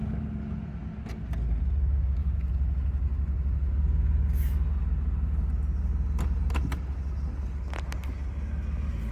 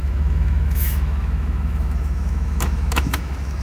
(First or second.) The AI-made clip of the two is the second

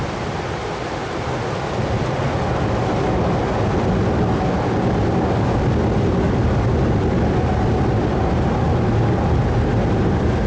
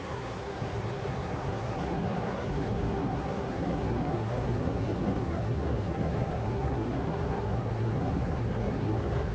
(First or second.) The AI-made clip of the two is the second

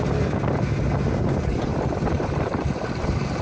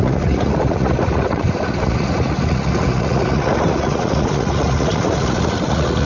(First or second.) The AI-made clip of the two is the second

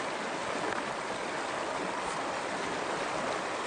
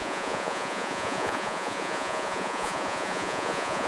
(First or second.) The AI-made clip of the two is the second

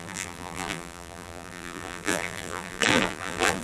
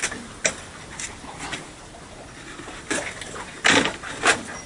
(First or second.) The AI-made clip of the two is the first